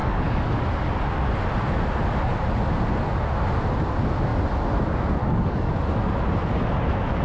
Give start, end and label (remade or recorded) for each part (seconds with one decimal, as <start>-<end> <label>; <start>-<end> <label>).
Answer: 0.0-0.6 remade; 0.6-5.2 recorded; 5.2-5.7 remade; 5.7-7.2 recorded